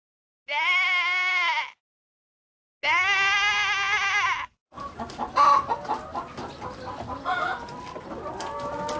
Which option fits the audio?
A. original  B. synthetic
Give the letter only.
A